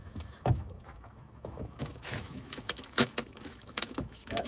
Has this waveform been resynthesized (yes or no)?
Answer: yes